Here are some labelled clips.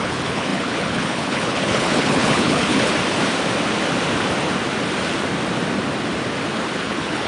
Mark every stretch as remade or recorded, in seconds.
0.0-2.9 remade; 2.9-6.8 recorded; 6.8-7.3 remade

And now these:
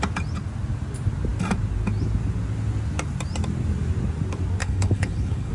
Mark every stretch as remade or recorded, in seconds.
0.0-4.6 recorded; 4.6-5.5 remade